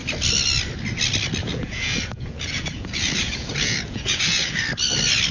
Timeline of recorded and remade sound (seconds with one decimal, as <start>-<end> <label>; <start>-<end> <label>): 0.0-1.4 recorded; 1.4-4.6 remade; 4.6-5.3 recorded